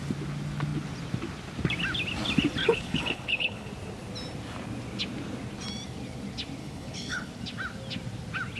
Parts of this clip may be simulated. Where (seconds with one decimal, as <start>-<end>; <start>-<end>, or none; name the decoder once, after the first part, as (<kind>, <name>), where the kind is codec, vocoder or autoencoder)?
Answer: 2.6-3.7 (codec, HILCodec); 6.6-7.3